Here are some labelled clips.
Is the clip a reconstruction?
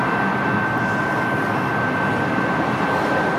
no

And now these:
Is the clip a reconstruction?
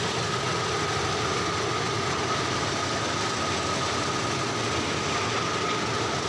no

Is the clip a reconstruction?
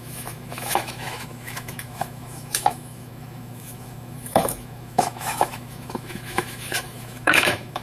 yes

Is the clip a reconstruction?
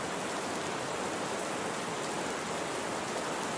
no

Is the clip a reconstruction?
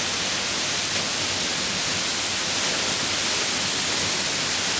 no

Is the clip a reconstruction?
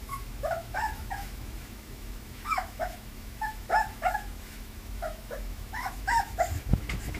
yes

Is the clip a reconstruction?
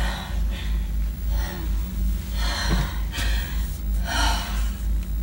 no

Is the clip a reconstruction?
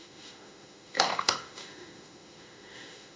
yes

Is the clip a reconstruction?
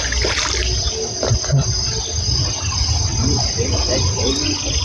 no